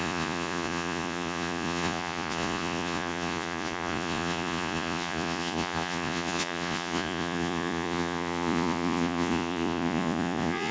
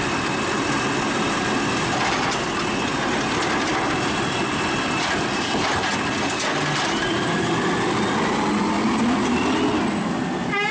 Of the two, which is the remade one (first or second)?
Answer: first